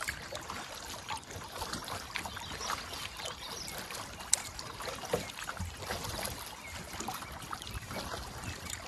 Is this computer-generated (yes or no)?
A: no